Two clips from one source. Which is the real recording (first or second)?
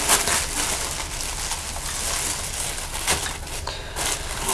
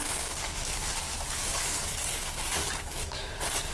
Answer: first